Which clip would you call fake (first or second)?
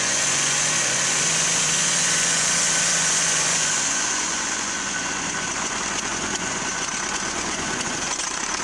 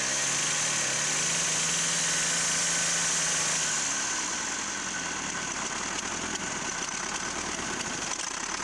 first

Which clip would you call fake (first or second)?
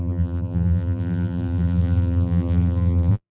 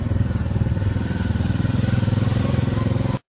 first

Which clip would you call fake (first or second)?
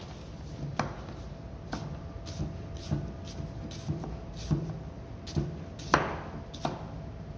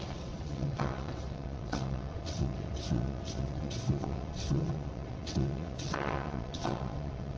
second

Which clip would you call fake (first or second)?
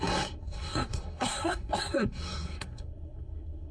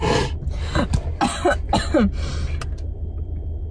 first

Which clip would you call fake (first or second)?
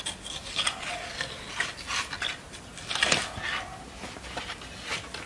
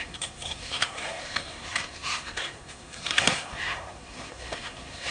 second